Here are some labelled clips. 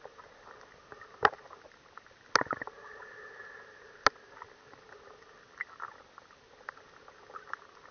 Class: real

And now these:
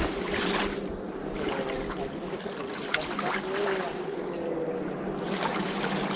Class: real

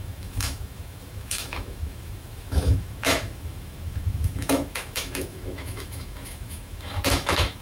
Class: fake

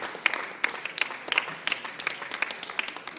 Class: real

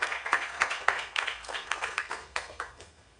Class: fake